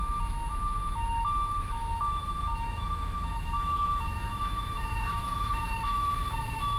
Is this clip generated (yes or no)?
yes